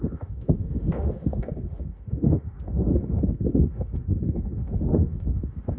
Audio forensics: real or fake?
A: fake